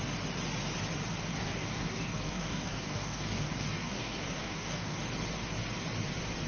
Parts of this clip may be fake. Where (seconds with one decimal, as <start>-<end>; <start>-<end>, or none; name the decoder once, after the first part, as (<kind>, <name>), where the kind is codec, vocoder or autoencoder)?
1.3-5.0 (codec, DAC)